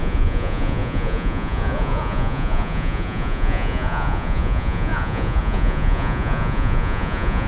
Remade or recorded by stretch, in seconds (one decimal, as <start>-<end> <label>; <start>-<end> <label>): 0.0-7.5 remade

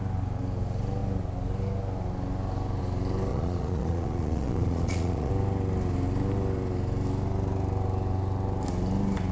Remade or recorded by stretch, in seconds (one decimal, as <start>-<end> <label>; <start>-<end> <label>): 0.0-3.3 recorded; 3.3-5.3 remade; 5.3-9.3 recorded

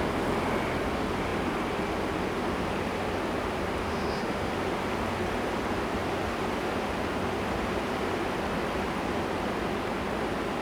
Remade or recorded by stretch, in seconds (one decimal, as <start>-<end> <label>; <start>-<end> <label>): 0.0-3.8 recorded; 3.8-4.5 remade; 4.5-10.6 recorded

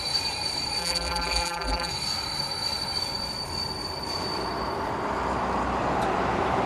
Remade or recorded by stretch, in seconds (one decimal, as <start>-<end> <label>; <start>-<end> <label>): 0.0-0.8 recorded; 0.8-1.9 remade; 1.9-6.7 recorded

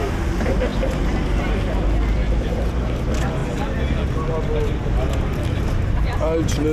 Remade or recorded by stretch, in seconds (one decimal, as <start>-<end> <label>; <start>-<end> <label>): 0.0-6.7 recorded

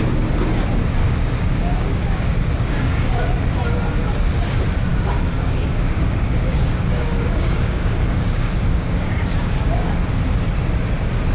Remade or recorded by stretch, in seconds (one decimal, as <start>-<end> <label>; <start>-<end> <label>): 0.0-1.0 recorded; 1.0-3.2 remade; 3.2-4.9 recorded; 4.9-9.9 remade; 9.9-11.3 recorded

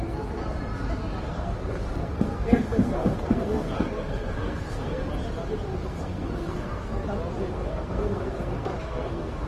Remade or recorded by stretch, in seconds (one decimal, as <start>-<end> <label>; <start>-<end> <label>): 0.0-0.4 remade; 0.4-1.3 recorded; 1.3-5.0 remade; 5.0-5.8 recorded; 5.8-7.0 remade; 7.0-7.5 recorded; 7.5-9.5 remade

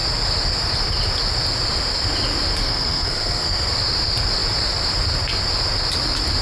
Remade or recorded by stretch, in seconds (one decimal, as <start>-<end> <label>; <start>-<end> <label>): 0.0-2.6 recorded; 2.6-3.7 remade; 3.7-6.4 recorded